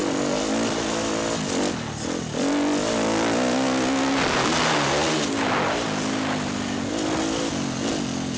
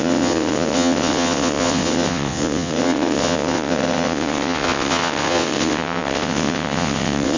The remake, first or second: second